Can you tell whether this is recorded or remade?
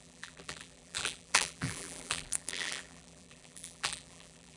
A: remade